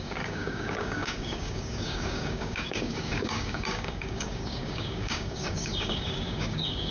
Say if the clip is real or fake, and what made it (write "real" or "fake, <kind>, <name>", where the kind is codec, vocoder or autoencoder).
fake, codec, DAC